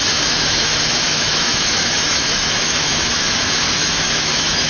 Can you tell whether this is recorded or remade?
remade